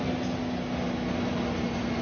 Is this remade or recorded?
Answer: recorded